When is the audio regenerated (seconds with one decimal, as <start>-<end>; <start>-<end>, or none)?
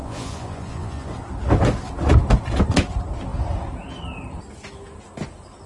0.0-1.1